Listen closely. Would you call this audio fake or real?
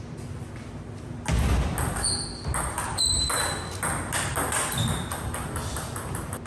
real